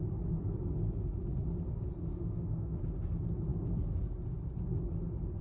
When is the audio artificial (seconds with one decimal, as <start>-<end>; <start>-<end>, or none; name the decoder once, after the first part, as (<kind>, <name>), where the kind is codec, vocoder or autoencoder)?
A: 2.0-2.8 (autoencoder, DAC-VAE)